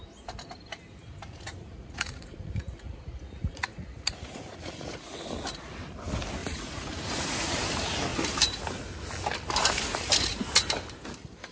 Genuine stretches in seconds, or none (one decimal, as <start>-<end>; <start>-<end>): 0.0-1.6; 5.1-6.4; 7.6-11.5